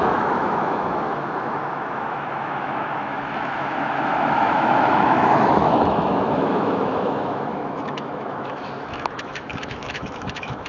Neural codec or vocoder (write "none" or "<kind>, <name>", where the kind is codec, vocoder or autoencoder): autoencoder, DAC-VAE